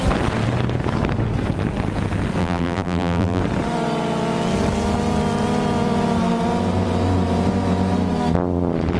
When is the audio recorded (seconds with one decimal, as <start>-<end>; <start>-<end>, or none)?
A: 0.0-2.4; 3.4-9.0